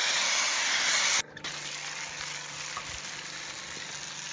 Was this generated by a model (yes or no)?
no